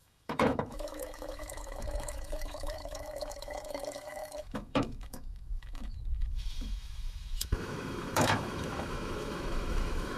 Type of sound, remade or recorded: remade